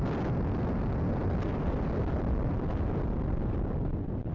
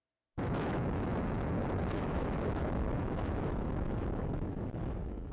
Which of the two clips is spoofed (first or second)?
second